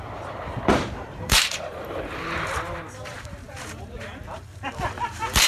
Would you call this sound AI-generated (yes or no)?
yes